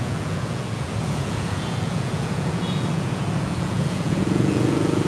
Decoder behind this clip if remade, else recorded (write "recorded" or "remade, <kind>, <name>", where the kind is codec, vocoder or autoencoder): remade, vocoder, Vocos